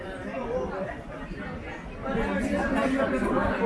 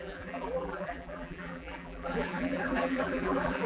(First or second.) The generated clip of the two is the second